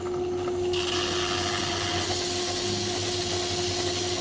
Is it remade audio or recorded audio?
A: recorded